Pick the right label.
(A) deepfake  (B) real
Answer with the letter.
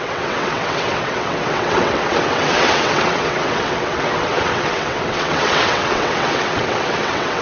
A